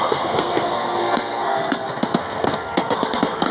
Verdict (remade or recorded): remade